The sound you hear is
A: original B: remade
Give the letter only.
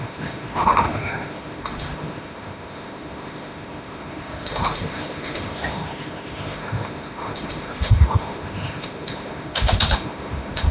B